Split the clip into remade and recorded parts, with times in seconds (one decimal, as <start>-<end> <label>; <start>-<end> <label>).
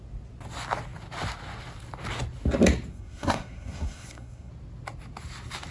0.0-2.9 recorded; 2.9-4.5 remade; 4.5-5.7 recorded